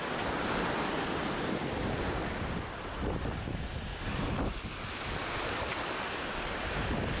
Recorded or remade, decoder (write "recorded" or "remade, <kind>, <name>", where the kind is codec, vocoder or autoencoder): remade, vocoder, BigVGAN v2